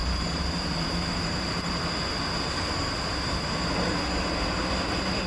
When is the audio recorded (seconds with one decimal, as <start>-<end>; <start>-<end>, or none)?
2.0-5.3